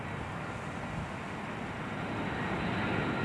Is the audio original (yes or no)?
yes